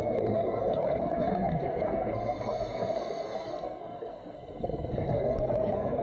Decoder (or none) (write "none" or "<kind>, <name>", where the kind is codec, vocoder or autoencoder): codec, SNAC